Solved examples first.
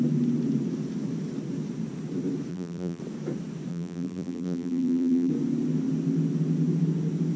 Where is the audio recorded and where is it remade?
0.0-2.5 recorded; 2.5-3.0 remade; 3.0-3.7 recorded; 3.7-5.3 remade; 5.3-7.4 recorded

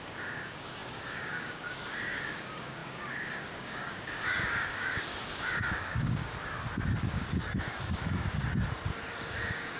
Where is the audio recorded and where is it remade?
0.0-6.3 remade; 6.3-7.1 recorded; 7.1-8.5 remade; 8.5-9.3 recorded; 9.3-9.8 remade

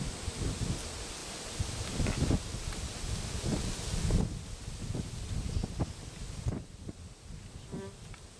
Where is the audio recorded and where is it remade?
0.0-8.4 recorded

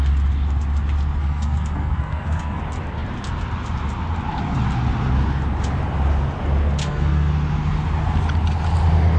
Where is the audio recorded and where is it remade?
0.0-1.2 recorded; 1.2-2.6 remade; 2.6-6.8 recorded; 6.8-7.3 remade; 7.3-9.2 recorded